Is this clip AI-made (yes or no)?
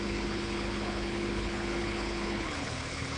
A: yes